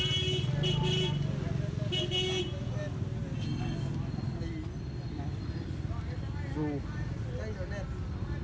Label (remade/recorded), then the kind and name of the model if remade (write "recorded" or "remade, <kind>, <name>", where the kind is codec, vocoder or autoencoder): recorded